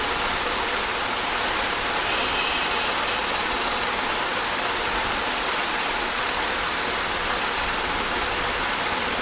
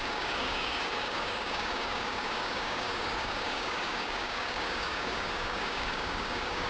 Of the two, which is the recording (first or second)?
first